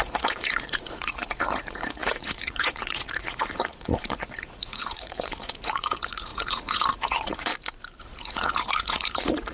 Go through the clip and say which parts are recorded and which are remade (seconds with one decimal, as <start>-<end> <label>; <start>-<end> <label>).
0.0-7.5 remade; 7.5-8.0 recorded; 8.0-9.5 remade